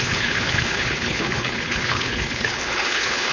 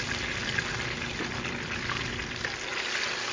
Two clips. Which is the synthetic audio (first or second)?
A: first